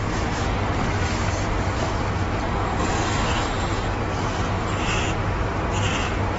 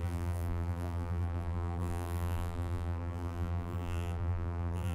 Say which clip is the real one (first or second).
first